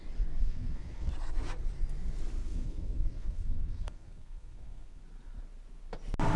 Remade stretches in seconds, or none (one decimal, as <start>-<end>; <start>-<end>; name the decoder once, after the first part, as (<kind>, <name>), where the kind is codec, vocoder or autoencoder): 0.4-1.1 (codec, SNAC); 2.4-5.0